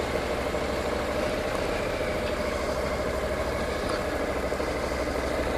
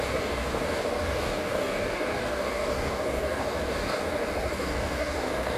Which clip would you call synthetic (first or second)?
second